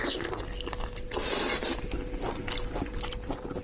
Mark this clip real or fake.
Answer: fake